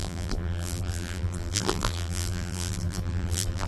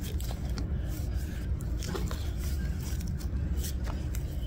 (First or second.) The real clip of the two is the second